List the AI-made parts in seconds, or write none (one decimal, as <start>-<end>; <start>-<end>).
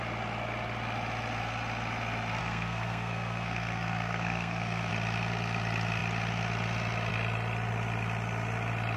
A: 2.4-4.9